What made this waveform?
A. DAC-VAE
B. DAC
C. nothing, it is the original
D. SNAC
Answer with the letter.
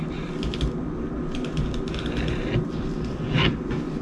C